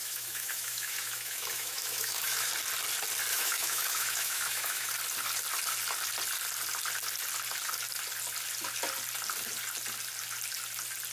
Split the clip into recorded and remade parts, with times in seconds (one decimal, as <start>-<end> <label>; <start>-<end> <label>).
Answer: 0.0-2.5 remade; 2.5-3.3 recorded; 3.3-4.9 remade; 4.9-11.1 recorded